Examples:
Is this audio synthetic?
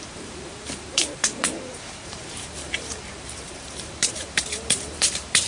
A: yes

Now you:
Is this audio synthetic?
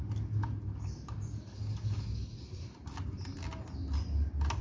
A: no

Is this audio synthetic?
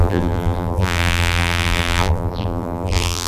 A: yes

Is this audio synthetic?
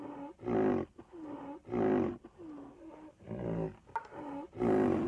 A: no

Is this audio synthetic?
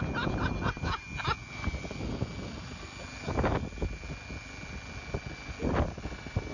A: no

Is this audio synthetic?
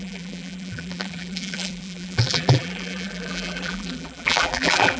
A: yes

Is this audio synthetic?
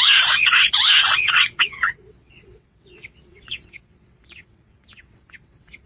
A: yes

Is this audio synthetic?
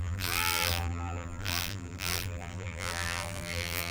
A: yes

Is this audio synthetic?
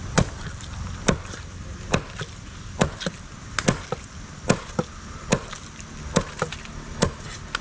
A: no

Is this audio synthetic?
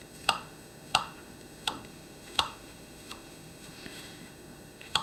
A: yes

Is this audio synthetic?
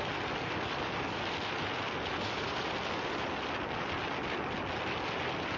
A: no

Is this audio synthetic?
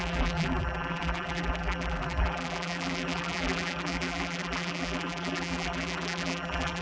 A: yes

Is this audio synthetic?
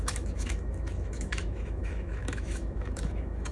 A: yes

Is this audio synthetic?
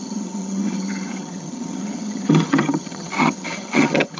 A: yes